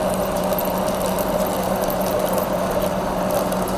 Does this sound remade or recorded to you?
recorded